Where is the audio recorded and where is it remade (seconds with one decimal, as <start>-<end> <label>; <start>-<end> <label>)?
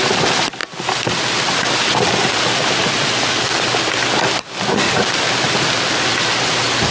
0.0-6.9 recorded